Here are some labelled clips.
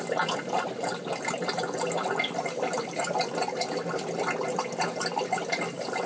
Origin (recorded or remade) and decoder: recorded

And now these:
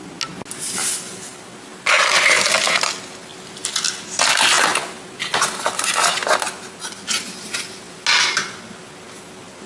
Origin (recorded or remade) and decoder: recorded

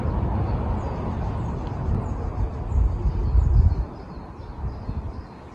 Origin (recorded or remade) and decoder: recorded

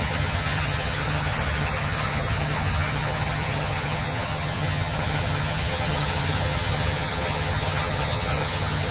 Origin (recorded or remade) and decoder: remade, vocoder, HiFi-GAN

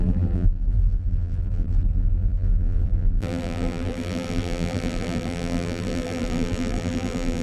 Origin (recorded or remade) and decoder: remade, vocoder, BigVGAN v2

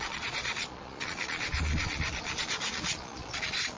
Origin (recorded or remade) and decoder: remade, vocoder, Vocos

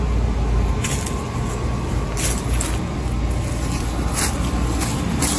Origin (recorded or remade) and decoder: recorded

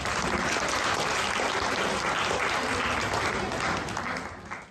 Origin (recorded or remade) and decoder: recorded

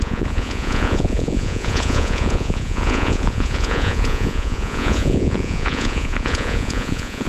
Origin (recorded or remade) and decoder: remade, vocoder, Vocos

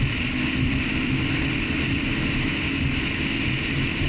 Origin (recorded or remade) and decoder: recorded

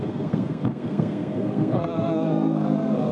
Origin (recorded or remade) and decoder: remade, codec, SNAC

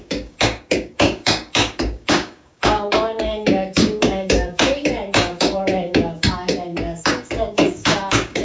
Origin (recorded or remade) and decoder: remade, codec, DAC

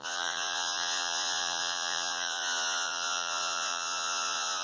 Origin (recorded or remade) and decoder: remade, vocoder, Vocos